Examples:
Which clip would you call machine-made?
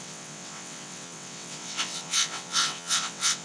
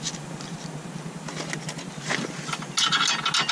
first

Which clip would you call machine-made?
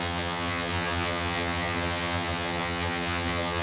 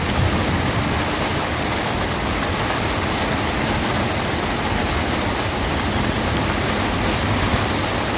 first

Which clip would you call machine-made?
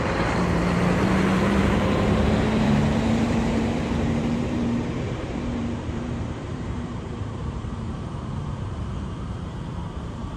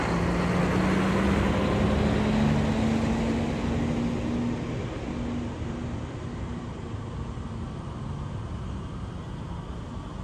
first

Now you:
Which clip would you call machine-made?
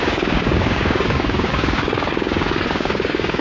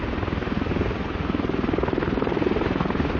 first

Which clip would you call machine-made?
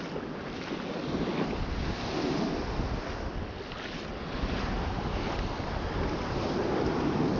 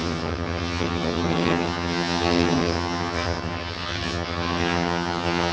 second